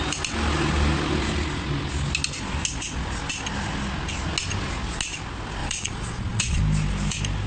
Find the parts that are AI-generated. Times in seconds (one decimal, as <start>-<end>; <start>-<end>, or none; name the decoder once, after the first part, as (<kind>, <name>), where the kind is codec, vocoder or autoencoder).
5.6-6.6 (vocoder, Vocos)

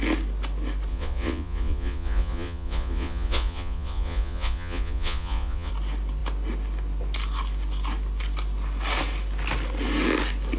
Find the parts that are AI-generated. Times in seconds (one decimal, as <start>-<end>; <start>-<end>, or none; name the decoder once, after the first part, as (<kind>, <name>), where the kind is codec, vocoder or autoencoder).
0.9-5.7 (vocoder, Vocos)

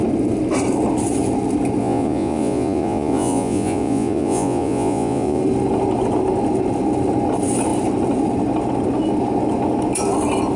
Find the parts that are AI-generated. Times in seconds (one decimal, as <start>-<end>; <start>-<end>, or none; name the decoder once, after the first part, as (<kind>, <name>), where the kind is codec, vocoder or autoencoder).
1.8-5.4 (vocoder, Vocos)

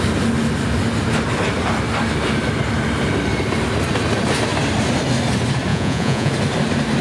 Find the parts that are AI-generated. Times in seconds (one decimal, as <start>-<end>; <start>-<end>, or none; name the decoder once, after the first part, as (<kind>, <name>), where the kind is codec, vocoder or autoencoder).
5.7-6.3 (vocoder, Vocos)

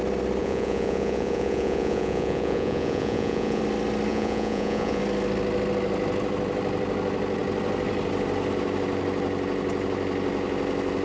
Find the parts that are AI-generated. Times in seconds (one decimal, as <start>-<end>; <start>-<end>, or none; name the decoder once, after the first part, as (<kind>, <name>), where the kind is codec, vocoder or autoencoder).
0.4-3.6 (vocoder, Vocos); 4.1-5.0

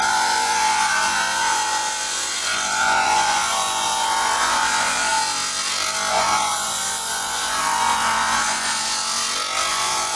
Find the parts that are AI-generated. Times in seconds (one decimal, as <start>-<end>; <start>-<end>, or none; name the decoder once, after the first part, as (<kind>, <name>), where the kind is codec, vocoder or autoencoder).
0.0-5.1 (vocoder, Vocos); 6.1-9.0; 9.7-10.2

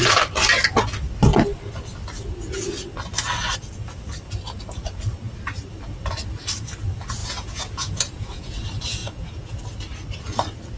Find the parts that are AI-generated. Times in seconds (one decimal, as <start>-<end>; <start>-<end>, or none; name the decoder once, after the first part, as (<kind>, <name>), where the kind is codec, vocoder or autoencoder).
7.2-8.5 (vocoder, Vocos); 9.0-9.5